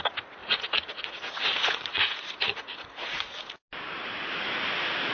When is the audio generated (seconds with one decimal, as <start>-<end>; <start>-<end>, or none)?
0.4-3.5